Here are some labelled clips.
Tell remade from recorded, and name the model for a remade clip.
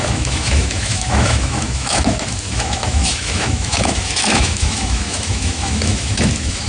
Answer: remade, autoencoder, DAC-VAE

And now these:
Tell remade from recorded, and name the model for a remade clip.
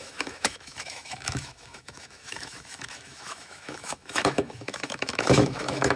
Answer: remade, autoencoder, DAC-VAE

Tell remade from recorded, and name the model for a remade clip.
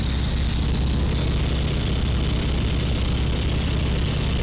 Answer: recorded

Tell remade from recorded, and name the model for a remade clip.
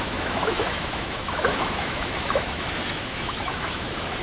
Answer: remade, autoencoder, DAC-VAE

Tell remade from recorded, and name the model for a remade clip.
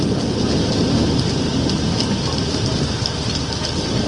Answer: recorded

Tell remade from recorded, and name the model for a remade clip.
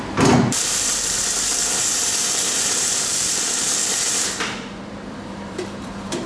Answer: remade, vocoder, BigVGAN v2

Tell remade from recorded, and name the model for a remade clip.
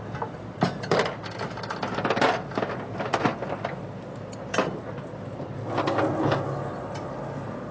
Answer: recorded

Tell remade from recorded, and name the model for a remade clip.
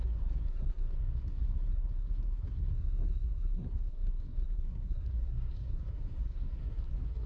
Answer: remade, codec, SNAC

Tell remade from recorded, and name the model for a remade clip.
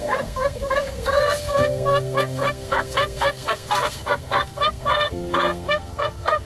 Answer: remade, codec, SNAC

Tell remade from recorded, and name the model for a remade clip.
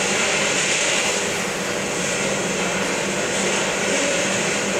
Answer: recorded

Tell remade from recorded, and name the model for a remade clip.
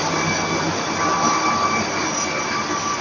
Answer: recorded